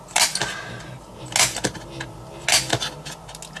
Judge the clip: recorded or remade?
recorded